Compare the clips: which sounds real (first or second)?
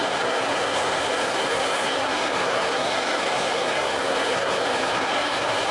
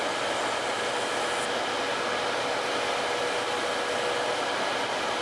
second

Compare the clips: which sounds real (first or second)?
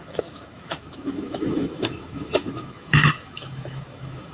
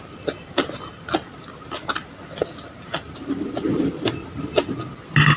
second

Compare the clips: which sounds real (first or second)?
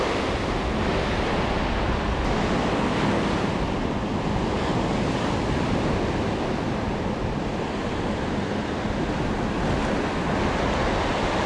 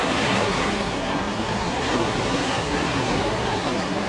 first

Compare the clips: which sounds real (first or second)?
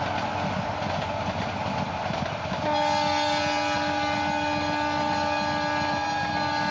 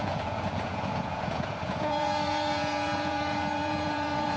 first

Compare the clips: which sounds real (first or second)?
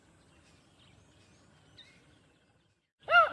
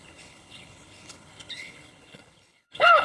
first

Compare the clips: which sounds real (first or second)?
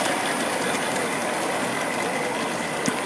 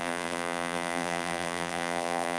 first